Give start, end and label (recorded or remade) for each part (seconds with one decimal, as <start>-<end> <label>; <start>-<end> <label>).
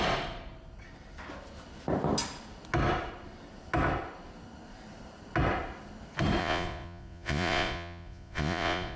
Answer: 0.0-6.4 recorded; 6.4-9.0 remade